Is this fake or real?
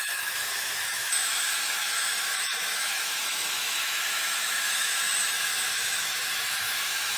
fake